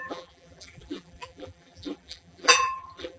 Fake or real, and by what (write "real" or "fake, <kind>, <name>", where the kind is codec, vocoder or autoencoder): fake, vocoder, BigVGAN v2